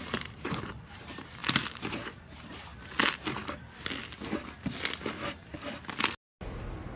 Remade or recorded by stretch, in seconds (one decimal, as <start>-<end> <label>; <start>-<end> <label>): 0.0-2.7 remade; 2.7-7.0 recorded